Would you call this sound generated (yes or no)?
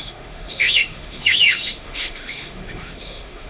yes